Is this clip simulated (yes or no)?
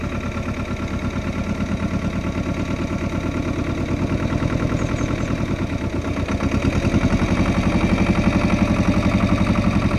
no